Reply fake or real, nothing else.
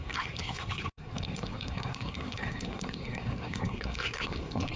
fake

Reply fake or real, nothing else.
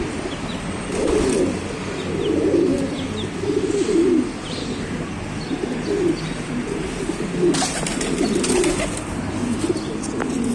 real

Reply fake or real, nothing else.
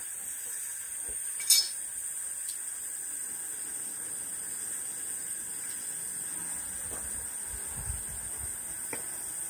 real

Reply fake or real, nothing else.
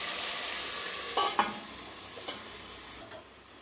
real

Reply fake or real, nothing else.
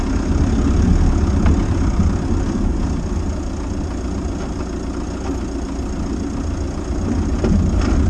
real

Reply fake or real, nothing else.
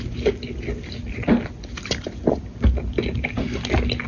real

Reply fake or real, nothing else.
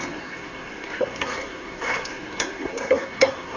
fake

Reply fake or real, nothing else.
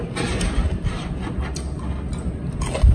real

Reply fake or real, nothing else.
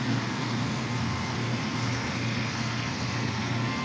fake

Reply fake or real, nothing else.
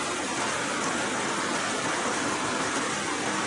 real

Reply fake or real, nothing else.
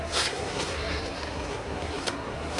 fake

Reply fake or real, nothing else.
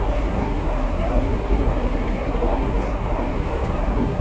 fake